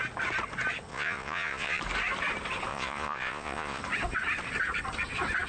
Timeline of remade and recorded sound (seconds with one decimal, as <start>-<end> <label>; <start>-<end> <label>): 0.0-0.9 recorded; 0.9-1.8 remade; 1.8-2.7 recorded; 2.7-3.8 remade; 3.8-5.5 recorded